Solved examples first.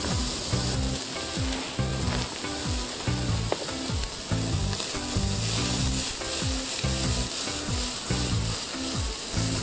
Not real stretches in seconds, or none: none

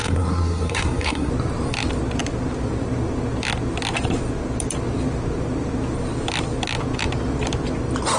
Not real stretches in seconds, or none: 0.0-1.3 (codec, SNAC)

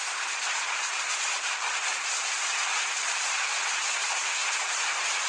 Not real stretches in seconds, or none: 0.0-5.3 (vocoder, BigVGAN v2)

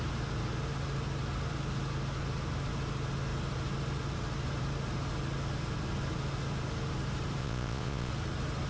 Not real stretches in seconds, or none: 7.4-8.1 (vocoder, Vocos)